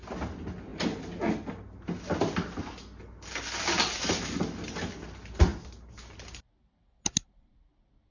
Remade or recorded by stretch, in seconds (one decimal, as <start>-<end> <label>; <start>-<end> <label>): 0.0-8.1 recorded